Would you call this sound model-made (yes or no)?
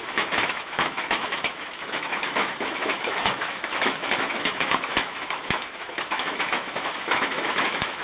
yes